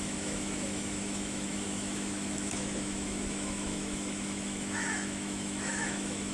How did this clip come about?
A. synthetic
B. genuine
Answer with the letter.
A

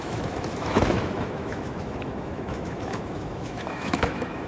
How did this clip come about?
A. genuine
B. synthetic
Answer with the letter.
B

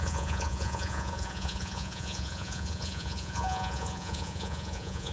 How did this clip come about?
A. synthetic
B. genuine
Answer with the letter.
A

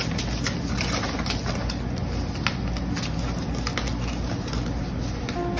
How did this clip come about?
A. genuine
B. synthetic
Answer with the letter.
A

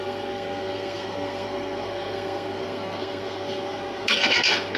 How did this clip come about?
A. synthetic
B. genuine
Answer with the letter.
A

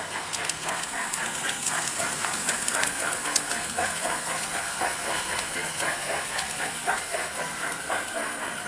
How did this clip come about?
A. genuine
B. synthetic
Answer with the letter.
B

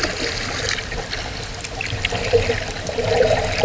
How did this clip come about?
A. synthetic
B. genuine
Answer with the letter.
B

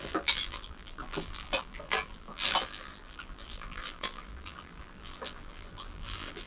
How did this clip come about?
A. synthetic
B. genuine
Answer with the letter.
A